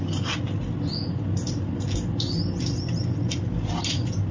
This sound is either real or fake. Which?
real